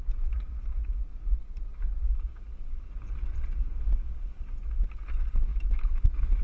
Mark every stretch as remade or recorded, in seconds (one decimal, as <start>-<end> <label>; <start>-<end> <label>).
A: 0.0-5.5 recorded; 5.5-6.4 remade

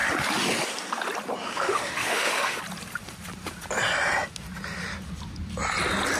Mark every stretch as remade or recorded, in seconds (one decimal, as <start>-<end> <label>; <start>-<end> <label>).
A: 0.0-1.4 recorded; 1.4-2.6 remade; 2.6-6.2 recorded